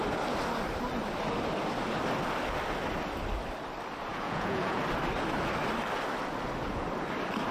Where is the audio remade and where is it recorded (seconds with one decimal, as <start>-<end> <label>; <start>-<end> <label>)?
0.0-4.1 recorded; 4.1-4.8 remade; 4.8-7.5 recorded